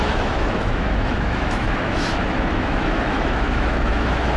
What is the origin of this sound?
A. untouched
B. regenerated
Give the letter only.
B